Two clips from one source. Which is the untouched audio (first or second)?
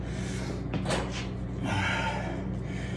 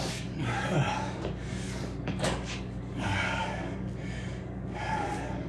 first